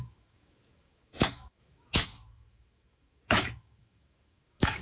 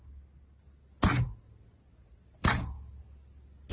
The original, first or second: second